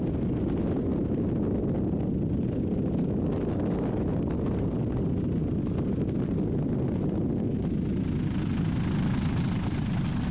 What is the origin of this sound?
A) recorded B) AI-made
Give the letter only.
A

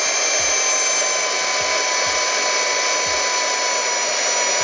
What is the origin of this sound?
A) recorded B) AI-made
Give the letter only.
A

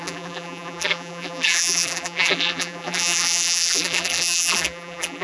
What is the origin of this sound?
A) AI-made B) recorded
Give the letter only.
A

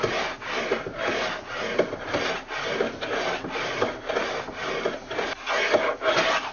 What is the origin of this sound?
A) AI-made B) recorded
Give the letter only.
B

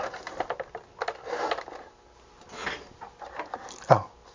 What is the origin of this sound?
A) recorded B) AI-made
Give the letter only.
A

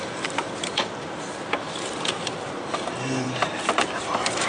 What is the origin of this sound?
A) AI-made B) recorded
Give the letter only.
A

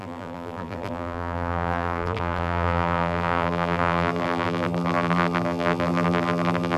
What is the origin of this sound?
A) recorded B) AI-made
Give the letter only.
B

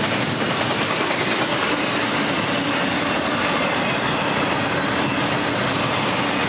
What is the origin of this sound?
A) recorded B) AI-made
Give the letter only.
A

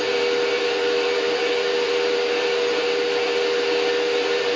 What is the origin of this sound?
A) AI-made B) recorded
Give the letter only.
B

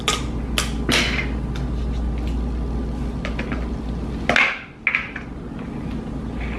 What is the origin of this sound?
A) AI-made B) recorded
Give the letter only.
B